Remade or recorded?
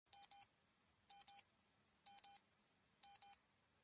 recorded